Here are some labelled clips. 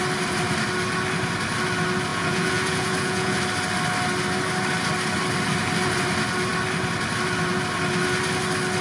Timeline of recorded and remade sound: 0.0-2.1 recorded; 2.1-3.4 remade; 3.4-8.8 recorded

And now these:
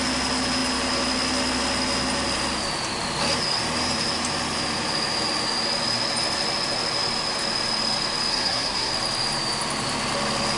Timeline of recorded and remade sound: 0.0-8.3 recorded; 8.3-8.9 remade; 8.9-10.6 recorded